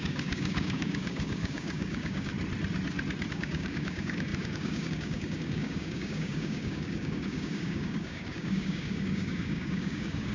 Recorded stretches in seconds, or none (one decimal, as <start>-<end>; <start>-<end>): 2.3-3.3